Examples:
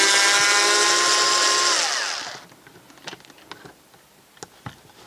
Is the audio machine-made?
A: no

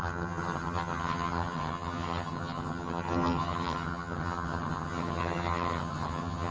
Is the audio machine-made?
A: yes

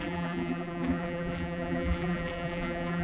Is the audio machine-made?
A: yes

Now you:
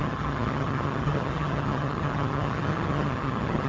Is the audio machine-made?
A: yes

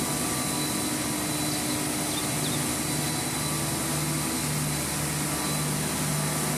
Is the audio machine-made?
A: no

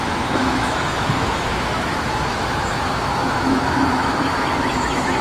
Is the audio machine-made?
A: yes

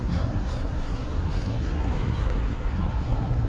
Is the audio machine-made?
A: yes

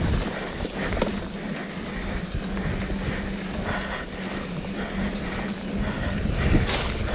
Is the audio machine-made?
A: no